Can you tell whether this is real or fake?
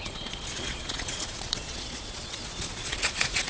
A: fake